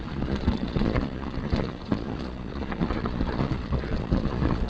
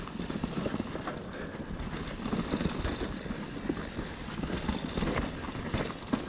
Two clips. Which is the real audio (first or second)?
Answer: second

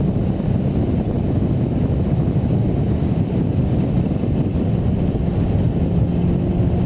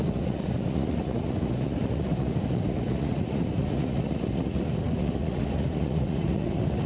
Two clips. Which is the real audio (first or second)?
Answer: first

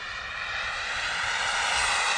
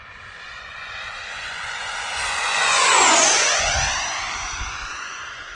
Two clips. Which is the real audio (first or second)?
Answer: first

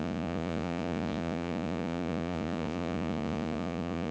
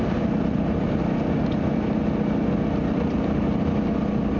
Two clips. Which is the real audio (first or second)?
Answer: second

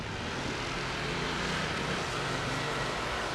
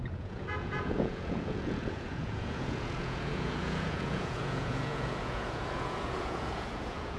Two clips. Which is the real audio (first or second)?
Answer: first